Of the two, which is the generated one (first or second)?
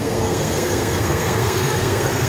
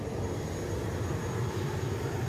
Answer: first